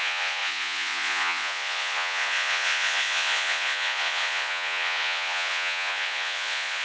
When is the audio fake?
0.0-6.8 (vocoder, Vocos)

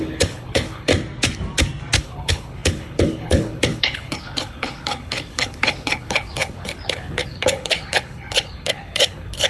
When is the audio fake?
0.0-0.9 (codec, HILCodec); 2.0-9.5